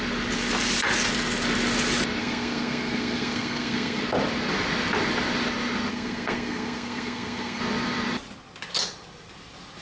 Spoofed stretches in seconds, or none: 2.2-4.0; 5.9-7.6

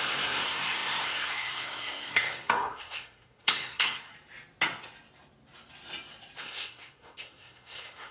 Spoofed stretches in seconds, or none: 0.0-4.1; 6.4-8.1